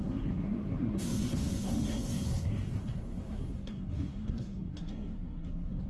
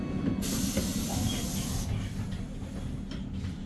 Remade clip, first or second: first